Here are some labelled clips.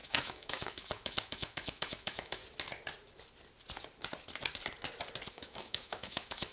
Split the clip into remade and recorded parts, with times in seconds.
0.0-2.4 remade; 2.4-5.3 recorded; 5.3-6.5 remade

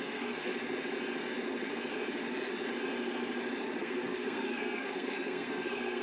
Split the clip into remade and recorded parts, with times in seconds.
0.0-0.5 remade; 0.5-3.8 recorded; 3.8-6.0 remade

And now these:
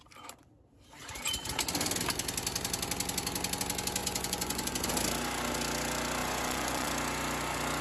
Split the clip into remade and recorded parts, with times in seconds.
0.0-4.0 recorded; 4.0-4.9 remade; 4.9-6.2 recorded; 6.2-6.9 remade; 6.9-7.8 recorded